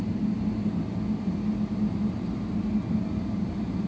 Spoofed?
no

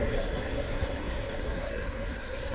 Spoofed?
yes